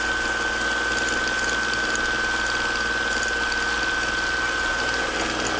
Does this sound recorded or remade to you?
recorded